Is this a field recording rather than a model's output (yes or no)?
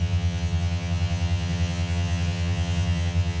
no